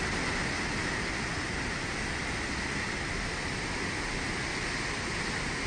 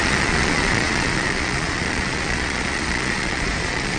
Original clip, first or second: first